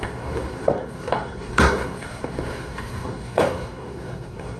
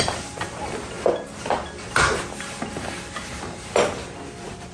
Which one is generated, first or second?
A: first